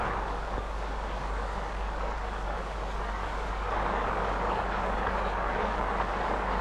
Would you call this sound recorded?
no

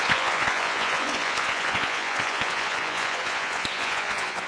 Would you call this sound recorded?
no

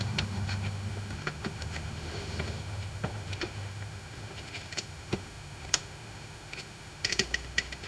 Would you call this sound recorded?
no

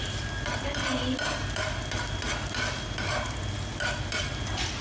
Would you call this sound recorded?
yes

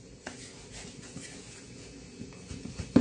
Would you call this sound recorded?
yes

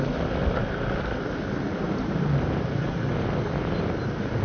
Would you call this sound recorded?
yes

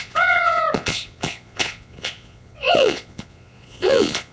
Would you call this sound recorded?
no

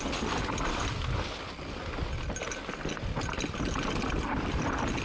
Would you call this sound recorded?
yes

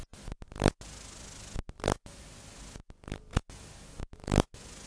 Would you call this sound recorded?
yes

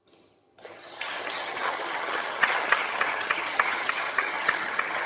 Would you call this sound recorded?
no